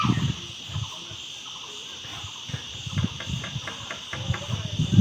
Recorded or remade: recorded